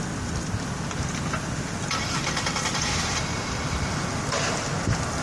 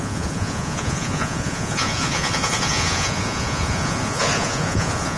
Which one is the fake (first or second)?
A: second